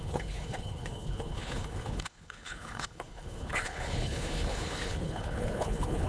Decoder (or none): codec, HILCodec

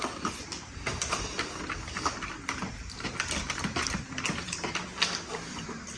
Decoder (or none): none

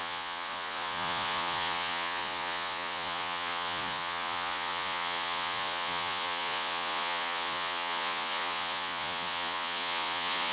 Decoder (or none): vocoder, Vocos